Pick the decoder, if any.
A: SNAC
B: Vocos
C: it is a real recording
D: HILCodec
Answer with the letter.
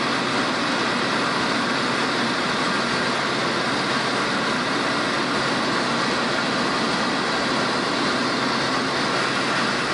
C